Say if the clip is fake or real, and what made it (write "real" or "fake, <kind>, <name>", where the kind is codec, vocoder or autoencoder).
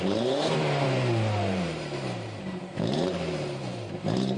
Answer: fake, vocoder, BigVGAN v2